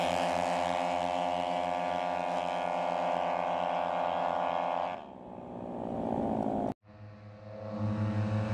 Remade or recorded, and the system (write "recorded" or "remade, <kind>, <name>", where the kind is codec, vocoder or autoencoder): recorded